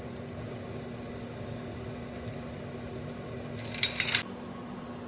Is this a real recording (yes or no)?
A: yes